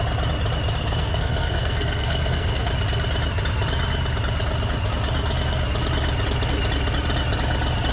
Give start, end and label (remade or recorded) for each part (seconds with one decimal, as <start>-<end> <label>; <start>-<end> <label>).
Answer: 0.0-0.8 recorded; 0.8-2.7 remade; 2.7-7.9 recorded